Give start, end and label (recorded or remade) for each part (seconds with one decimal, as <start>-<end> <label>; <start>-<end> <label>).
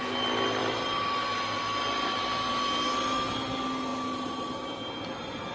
0.0-5.5 recorded